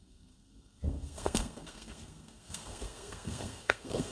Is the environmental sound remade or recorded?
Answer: remade